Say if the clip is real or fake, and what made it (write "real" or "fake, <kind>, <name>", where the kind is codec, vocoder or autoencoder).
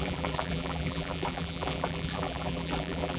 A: fake, vocoder, BigVGAN v2